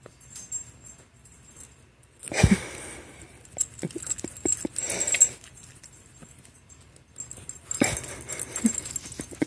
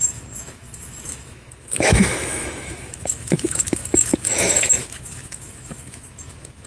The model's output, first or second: second